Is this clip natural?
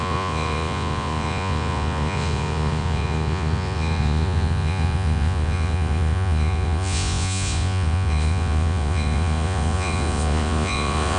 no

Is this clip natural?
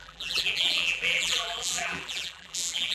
no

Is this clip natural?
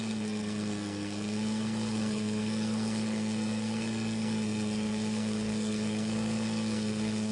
no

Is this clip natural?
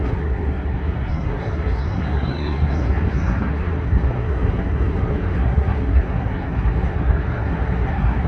no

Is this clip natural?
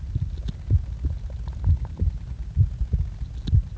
yes